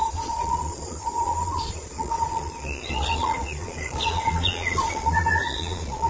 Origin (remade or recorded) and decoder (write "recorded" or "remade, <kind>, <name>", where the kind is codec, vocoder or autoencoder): remade, vocoder, Vocos